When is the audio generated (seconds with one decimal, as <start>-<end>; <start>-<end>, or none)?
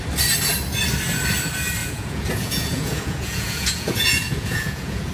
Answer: 1.8-5.1